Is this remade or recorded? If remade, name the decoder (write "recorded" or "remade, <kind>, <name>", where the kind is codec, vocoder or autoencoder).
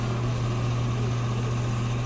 recorded